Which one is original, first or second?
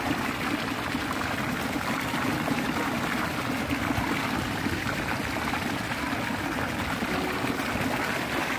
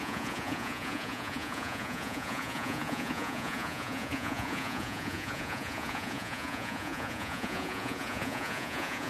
first